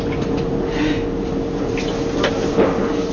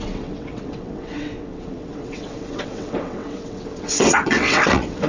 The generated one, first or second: second